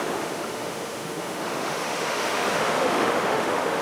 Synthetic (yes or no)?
yes